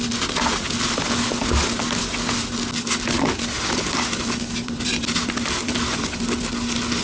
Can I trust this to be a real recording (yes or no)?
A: yes